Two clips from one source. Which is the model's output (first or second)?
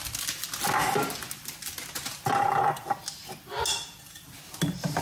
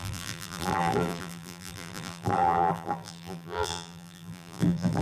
second